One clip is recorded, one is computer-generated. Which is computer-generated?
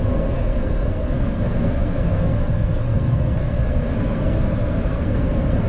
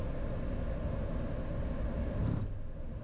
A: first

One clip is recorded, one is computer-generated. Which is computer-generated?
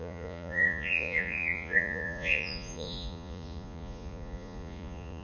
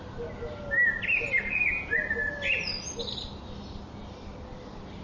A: first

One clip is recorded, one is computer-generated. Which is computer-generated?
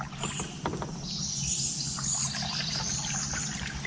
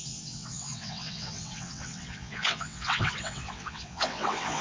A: second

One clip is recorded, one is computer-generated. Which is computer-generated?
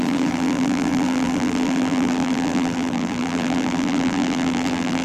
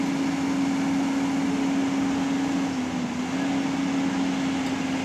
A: first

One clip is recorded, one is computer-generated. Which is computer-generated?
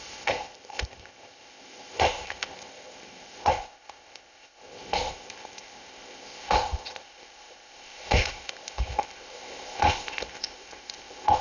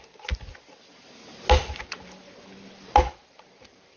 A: first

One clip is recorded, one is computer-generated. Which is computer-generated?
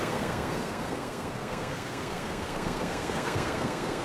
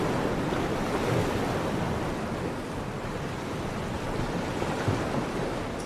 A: first